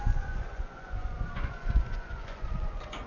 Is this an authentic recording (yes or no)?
no